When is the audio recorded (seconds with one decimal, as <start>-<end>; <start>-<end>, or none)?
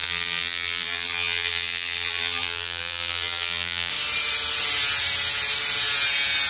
3.9-6.5